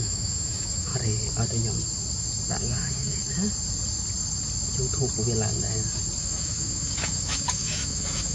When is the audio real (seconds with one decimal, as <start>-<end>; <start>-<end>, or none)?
0.9-2.6; 3.2-6.2